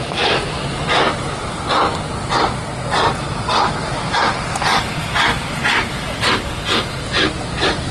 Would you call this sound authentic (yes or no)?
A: yes